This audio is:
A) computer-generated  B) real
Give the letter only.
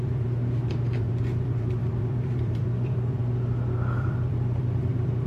A